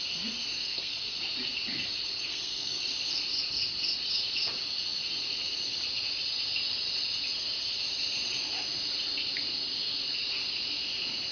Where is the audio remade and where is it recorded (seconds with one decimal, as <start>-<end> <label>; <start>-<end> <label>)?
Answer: 0.0-0.6 recorded; 0.6-1.2 remade; 1.2-2.3 recorded; 2.3-2.8 remade; 2.8-11.3 recorded